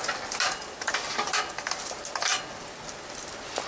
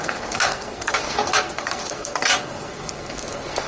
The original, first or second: first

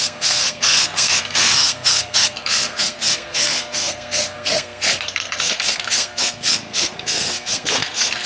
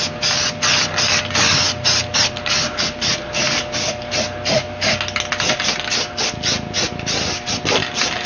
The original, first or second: second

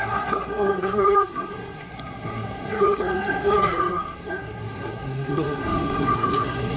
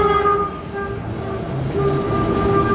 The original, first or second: second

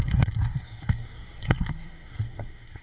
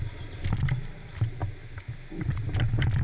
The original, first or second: second